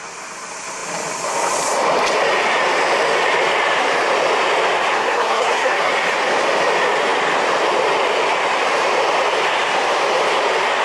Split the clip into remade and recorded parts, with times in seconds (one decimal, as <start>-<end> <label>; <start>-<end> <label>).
0.0-4.9 recorded; 4.9-5.9 remade; 5.9-10.8 recorded